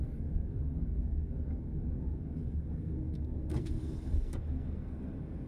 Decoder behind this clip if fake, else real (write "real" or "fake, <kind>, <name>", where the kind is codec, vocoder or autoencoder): fake, codec, SNAC